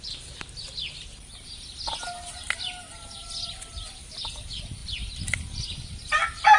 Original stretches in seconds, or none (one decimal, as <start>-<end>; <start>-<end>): 0.0-6.6